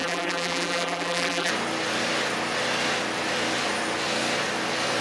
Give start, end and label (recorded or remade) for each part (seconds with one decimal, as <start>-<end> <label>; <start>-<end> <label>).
0.0-1.5 remade; 1.5-5.0 recorded